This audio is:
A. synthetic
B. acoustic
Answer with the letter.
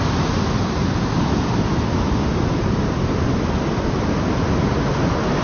B